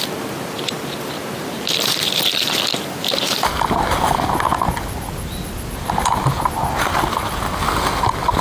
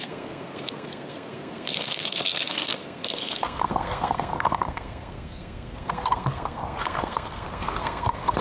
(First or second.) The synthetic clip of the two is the second